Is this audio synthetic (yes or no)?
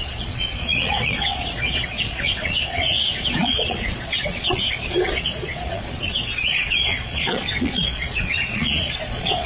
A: yes